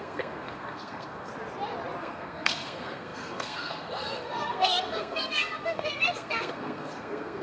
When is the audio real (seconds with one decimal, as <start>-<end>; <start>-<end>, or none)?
1.3-2.0